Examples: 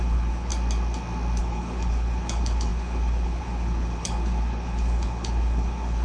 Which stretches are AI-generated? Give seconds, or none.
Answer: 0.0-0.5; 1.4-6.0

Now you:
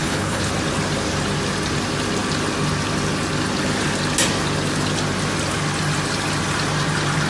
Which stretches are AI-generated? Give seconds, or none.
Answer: 0.0-0.5

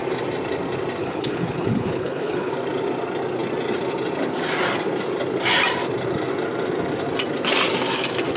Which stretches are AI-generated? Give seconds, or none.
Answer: 1.0-2.5